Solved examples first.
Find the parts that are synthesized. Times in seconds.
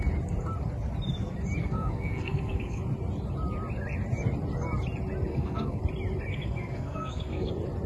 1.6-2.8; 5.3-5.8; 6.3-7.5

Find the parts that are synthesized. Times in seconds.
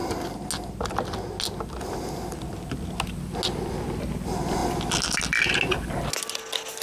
none